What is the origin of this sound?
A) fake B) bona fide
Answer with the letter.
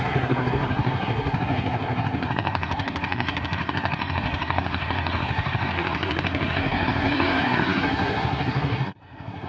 A